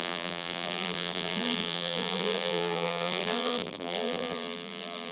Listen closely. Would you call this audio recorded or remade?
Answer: remade